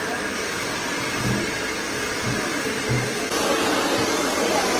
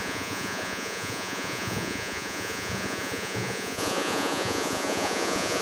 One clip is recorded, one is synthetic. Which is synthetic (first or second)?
second